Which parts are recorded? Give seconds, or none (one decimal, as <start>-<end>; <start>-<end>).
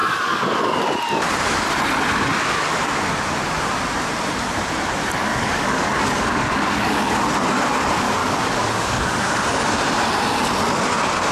0.8-5.3; 7.3-8.2; 9.4-11.3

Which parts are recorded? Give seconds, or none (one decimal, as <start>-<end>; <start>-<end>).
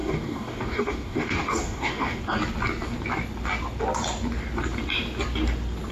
2.2-5.9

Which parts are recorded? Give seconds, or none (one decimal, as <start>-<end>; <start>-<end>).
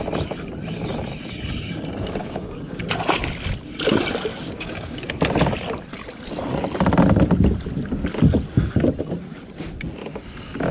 0.0-2.2; 2.8-4.3; 5.1-10.7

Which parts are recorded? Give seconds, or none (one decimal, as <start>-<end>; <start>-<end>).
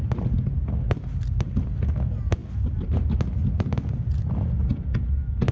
0.0-5.5